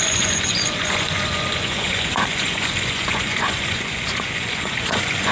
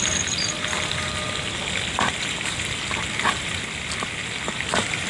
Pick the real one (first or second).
second